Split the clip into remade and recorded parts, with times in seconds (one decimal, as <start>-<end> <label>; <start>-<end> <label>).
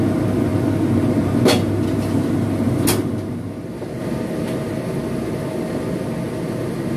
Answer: 0.0-7.0 recorded